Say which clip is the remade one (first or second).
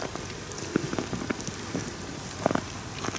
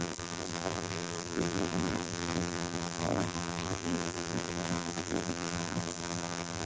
second